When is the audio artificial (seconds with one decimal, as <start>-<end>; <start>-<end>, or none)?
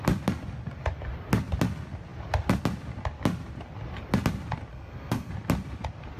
4.7-5.3